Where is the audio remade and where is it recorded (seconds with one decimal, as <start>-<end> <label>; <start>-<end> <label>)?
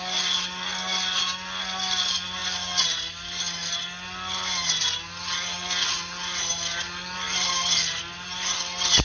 0.0-9.0 recorded